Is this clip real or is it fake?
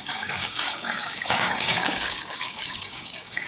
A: fake